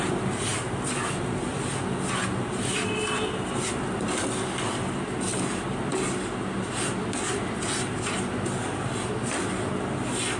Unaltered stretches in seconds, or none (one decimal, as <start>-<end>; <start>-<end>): 1.5-4.6